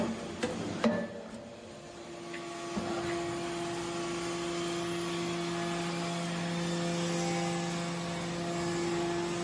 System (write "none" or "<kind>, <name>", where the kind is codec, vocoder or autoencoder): none